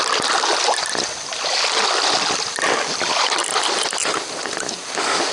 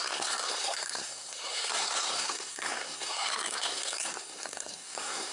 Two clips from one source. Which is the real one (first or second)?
first